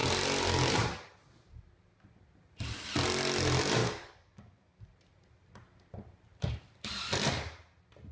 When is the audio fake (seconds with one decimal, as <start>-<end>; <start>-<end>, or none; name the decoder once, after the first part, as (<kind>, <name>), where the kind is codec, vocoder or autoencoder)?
3.8-4.8 (codec, DAC)